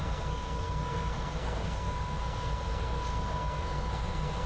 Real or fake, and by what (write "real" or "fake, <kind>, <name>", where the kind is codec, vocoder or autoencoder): fake, codec, SNAC